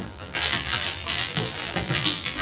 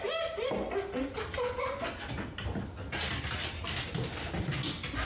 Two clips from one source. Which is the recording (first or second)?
second